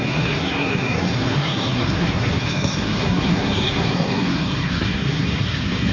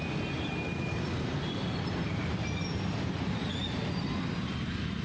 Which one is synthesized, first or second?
first